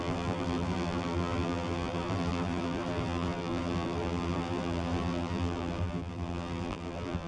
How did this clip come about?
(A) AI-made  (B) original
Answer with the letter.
A